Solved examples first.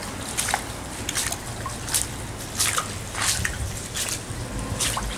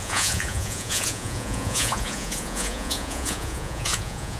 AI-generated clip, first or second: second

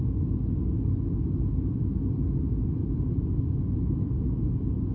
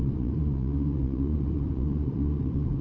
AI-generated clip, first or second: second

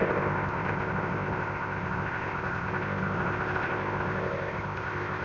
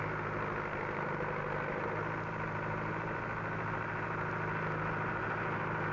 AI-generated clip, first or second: first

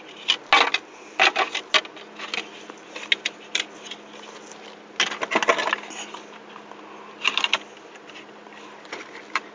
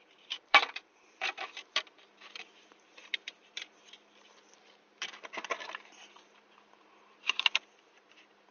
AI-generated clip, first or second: second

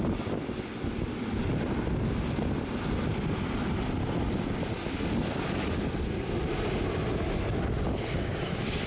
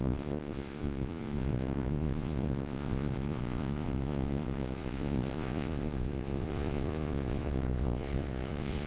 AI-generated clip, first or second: second